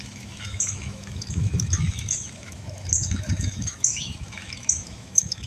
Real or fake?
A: fake